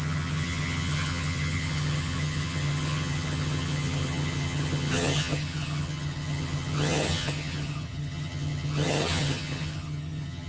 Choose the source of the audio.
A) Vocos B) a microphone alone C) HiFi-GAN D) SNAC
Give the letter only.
C